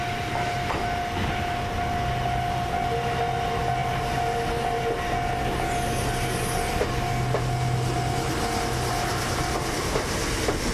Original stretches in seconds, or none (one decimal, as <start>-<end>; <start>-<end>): 0.0-10.7